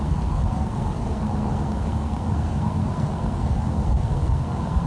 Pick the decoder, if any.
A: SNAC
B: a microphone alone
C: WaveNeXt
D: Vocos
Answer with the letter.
A